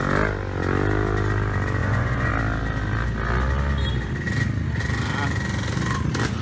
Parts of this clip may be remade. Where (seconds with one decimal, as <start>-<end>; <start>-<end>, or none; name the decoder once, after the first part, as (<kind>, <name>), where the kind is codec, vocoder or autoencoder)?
1.8-2.3 (vocoder, Vocos)